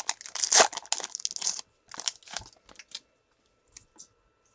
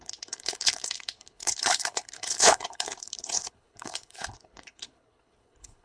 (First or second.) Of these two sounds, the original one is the first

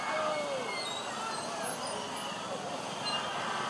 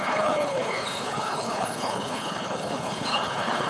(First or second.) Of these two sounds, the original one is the first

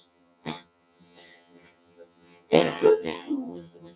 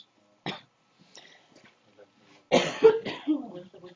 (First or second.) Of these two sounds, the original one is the second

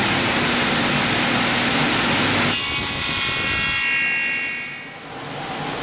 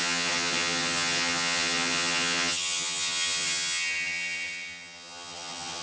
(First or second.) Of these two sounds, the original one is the first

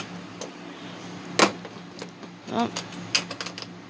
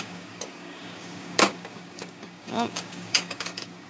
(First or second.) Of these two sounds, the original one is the first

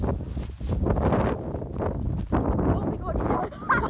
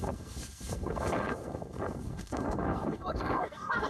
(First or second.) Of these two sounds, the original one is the first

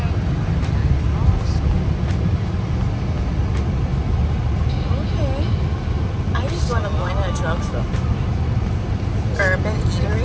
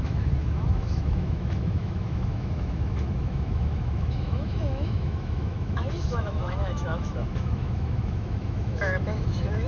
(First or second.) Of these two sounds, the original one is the first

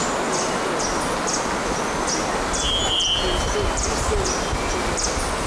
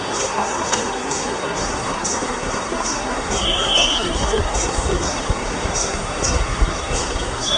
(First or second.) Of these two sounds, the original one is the first